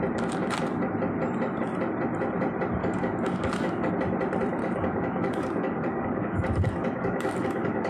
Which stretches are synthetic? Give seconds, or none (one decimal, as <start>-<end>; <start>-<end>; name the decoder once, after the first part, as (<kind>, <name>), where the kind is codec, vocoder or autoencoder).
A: 2.8-3.9 (codec, DAC); 4.6-7.9